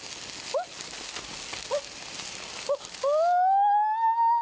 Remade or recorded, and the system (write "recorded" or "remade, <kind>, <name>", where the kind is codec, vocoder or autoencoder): recorded